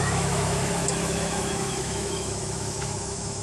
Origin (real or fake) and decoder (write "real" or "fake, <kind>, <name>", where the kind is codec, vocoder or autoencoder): fake, autoencoder, DAC-VAE